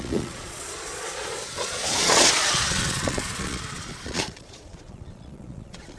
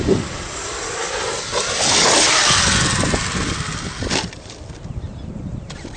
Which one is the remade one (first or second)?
first